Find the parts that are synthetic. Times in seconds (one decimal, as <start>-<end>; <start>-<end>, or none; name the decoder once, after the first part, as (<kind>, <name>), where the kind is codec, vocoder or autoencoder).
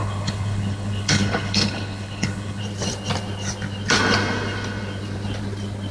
0.0-2.6 (codec, HILCodec)